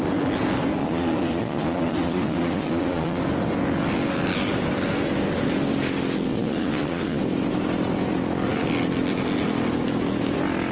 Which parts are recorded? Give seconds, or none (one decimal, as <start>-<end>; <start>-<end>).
0.0-0.8; 3.2-6.3; 7.2-10.7